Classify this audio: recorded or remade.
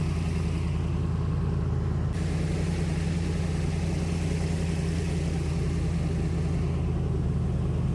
recorded